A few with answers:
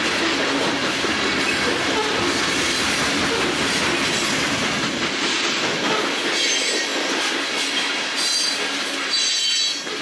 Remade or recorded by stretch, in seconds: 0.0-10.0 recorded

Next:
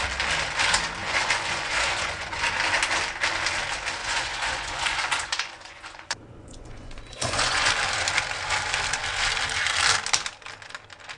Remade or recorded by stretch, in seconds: 0.0-1.0 recorded; 1.0-2.5 remade; 2.5-4.0 recorded; 4.0-7.7 remade; 7.7-11.2 recorded

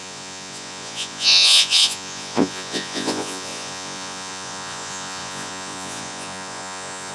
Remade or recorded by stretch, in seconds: 0.0-7.1 remade